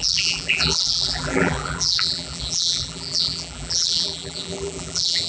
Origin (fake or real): fake